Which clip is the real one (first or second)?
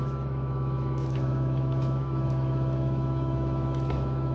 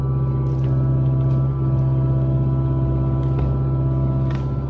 second